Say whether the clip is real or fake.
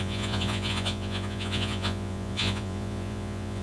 fake